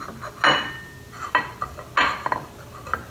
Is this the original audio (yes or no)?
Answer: yes